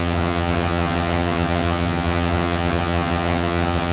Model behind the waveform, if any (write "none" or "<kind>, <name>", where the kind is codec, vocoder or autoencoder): vocoder, HiFi-GAN